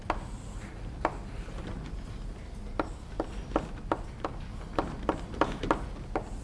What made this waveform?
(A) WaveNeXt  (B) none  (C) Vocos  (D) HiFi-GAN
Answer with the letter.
B